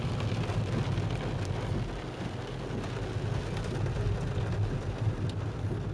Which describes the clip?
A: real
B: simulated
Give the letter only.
A